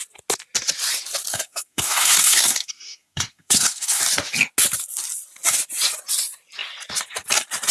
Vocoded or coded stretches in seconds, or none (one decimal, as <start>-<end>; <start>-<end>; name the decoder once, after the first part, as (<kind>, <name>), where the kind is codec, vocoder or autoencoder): 1.3-4.0 (codec, SNAC)